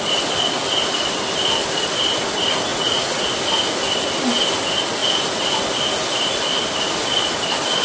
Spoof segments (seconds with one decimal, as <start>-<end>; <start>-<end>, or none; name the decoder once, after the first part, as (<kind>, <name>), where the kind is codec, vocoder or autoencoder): 2.7-3.3 (vocoder, Vocos)